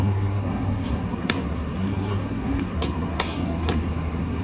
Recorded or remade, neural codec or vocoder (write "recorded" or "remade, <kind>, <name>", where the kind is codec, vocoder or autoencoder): remade, codec, SNAC